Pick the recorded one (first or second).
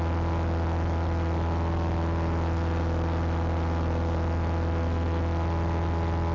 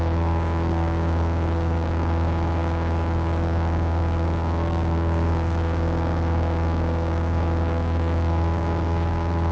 first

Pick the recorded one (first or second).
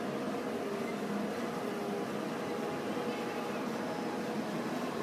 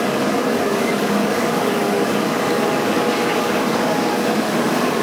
first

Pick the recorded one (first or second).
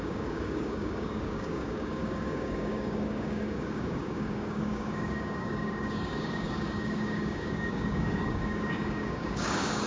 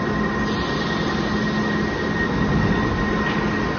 second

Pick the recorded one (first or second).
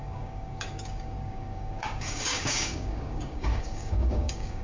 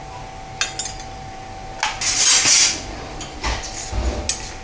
second